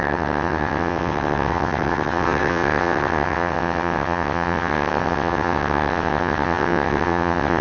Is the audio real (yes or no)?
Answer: no